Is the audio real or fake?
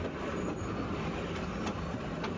real